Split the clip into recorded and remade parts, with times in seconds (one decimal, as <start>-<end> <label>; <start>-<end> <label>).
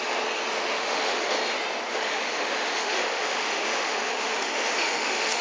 0.0-0.5 recorded; 0.5-1.3 remade; 1.3-1.9 recorded; 1.9-5.4 remade